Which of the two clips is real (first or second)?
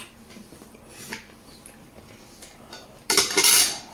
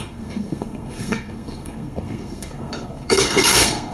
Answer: first